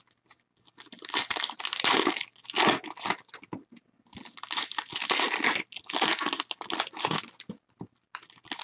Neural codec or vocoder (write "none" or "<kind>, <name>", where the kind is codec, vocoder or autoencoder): none